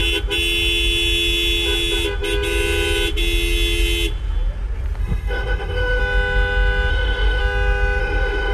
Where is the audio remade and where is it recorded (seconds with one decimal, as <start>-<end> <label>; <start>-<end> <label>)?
0.0-5.0 recorded; 5.0-6.0 remade; 6.0-6.9 recorded; 6.9-7.4 remade; 7.4-8.0 recorded; 8.0-8.5 remade